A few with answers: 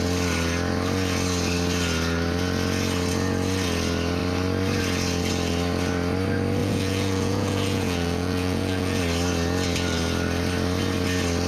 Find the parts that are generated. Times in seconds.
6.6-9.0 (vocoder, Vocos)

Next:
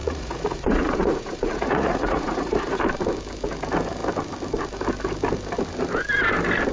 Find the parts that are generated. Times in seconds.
0.0-2.8 (vocoder, Vocos)

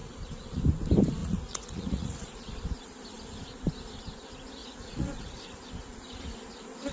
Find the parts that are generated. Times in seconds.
0.0-0.6 (vocoder, Vocos); 1.2-2.5; 4.6-5.6